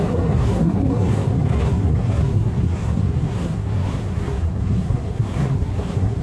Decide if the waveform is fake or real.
fake